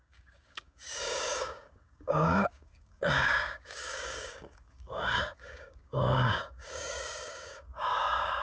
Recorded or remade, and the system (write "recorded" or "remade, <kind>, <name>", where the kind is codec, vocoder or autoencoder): remade, codec, DAC